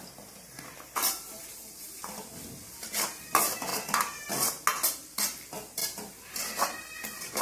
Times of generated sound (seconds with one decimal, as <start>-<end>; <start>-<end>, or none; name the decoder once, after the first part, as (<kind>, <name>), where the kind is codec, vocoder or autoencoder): 1.2-2.0 (vocoder, BigVGAN v2); 5.8-7.4